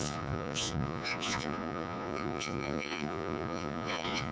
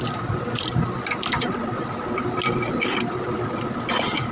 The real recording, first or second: second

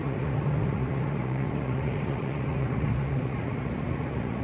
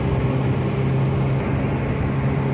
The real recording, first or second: second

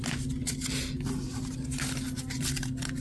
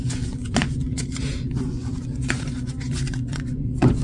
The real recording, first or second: first